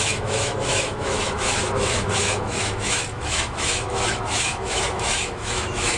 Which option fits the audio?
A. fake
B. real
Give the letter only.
A